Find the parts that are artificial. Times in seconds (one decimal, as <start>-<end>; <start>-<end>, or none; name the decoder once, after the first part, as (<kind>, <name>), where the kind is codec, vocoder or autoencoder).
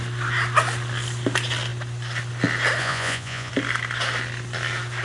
2.8-3.5 (vocoder, Vocos)